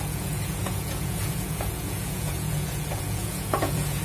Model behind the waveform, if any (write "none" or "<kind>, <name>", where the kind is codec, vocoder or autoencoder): vocoder, Vocos